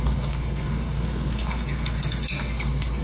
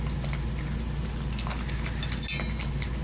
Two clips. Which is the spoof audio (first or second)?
first